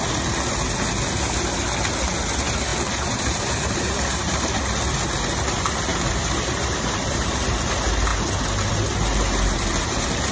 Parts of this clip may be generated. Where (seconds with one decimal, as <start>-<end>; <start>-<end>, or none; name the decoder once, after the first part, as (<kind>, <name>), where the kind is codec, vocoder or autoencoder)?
2.7-4.8 (vocoder, BigVGAN v2); 5.9-7.6